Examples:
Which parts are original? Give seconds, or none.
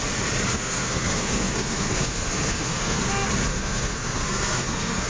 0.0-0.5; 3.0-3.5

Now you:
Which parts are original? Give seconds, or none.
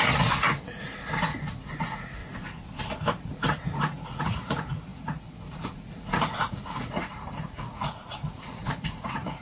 2.2-3.2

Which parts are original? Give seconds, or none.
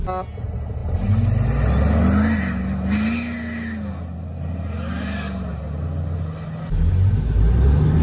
0.0-8.0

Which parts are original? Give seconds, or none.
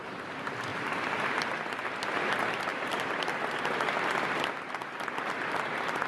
0.0-6.1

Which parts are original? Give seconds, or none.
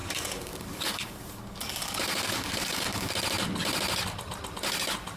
3.1-5.2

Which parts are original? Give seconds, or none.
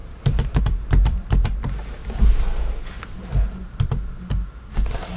2.0-5.2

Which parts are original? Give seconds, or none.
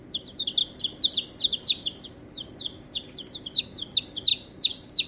0.0-0.6; 3.1-4.3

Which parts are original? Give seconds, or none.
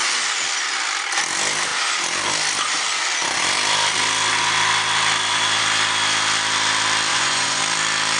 0.0-7.1; 7.6-8.2